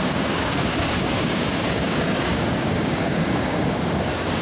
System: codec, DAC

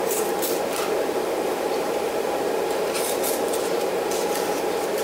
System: vocoder, BigVGAN v2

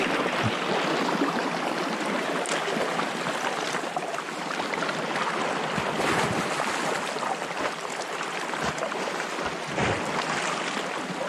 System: none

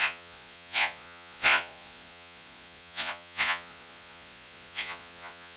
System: vocoder, Vocos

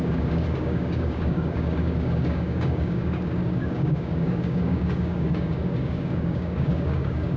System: codec, DAC